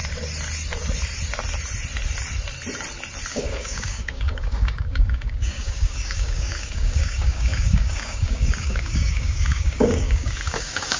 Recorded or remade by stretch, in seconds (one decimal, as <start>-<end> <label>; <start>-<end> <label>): 0.0-3.3 recorded; 3.3-11.0 remade